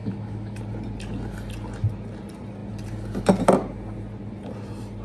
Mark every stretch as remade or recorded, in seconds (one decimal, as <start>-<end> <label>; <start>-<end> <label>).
0.0-0.6 remade; 0.6-5.0 recorded